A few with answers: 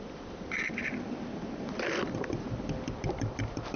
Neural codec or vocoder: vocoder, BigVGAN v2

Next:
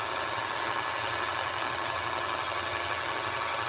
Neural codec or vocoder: vocoder, HiFi-GAN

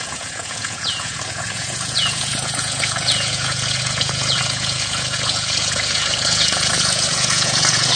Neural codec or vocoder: vocoder, Vocos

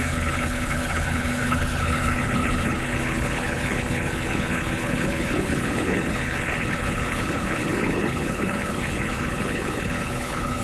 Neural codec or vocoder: codec, HILCodec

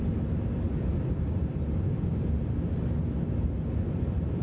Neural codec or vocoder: none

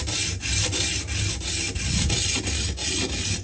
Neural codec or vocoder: none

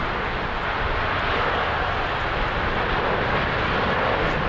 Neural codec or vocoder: none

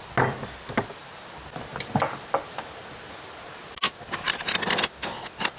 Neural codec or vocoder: none